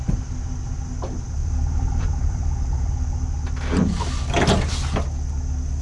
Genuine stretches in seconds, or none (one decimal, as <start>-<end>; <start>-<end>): 0.0-1.4; 2.9-5.8